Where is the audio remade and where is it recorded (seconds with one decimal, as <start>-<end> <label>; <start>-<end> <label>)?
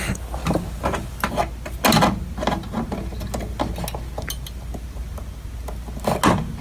0.0-0.4 recorded; 0.4-1.1 remade; 1.1-6.6 recorded